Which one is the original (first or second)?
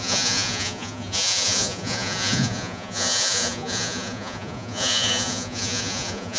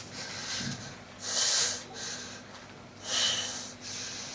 second